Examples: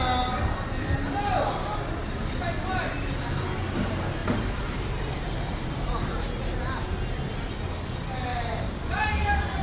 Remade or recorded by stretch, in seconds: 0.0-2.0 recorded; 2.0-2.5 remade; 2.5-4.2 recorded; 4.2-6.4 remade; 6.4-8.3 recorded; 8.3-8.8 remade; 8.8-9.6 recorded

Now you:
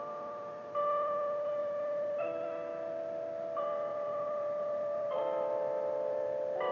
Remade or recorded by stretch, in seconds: 0.0-3.9 recorded; 3.9-5.2 remade; 5.2-6.7 recorded

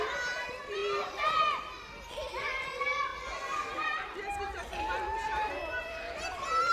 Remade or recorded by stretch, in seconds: 0.0-0.8 remade; 0.8-2.1 recorded; 2.1-3.1 remade; 3.1-5.5 recorded; 5.5-6.7 remade

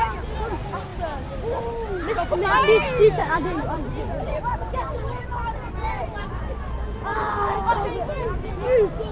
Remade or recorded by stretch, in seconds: 0.0-3.2 recorded; 3.2-6.3 remade; 6.3-7.1 recorded; 7.1-7.8 remade; 7.8-9.1 recorded